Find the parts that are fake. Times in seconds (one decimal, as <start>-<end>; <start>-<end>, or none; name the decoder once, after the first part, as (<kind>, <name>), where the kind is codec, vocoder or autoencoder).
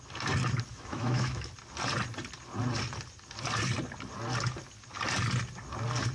0.7-1.5 (autoencoder, DAC-VAE)